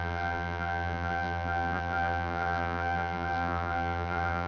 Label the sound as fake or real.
fake